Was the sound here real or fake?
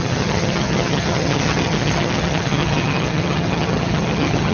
fake